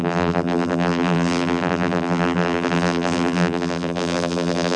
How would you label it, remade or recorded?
remade